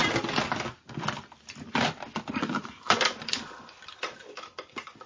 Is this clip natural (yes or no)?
yes